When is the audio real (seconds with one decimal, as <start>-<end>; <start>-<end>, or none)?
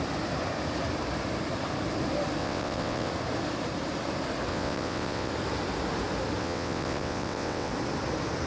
0.0-2.4; 3.1-4.5; 5.3-6.4; 7.7-8.5